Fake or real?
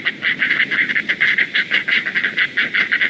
real